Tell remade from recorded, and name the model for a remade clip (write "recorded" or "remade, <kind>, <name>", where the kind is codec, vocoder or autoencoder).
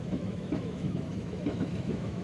remade, autoencoder, DAC-VAE